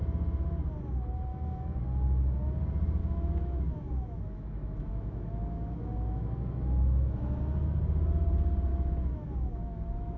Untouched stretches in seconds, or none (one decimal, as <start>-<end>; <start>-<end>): 0.0-1.3; 1.8-3.0; 7.4-8.7